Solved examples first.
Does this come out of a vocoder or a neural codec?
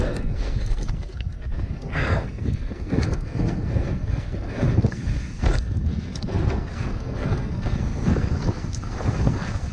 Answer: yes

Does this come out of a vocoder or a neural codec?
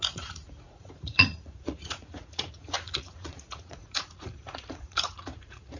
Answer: yes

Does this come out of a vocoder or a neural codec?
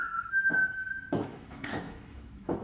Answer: yes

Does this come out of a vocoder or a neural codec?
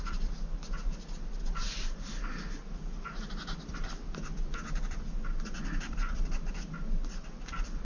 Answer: no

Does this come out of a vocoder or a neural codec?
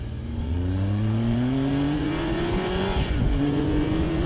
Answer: yes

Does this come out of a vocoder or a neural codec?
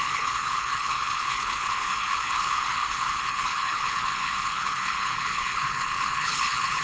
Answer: yes